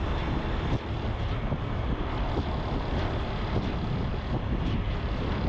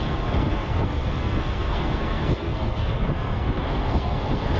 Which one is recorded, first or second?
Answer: first